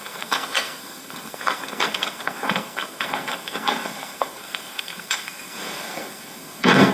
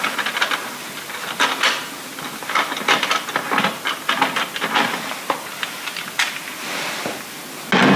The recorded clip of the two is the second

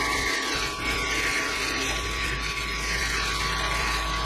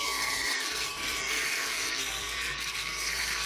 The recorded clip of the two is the first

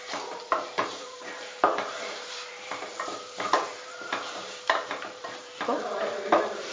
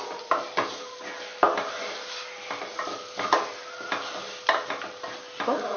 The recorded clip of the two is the second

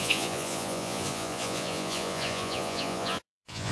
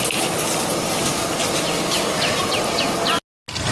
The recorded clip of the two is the second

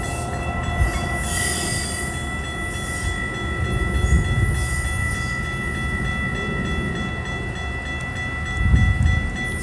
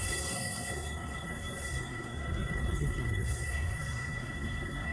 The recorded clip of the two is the first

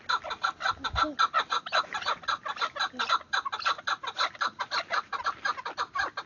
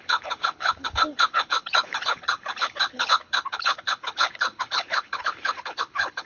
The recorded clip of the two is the first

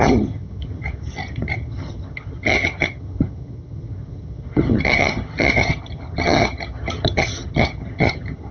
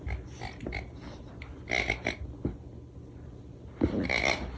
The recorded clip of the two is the second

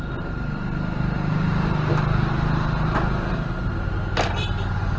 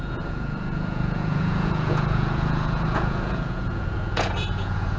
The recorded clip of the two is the first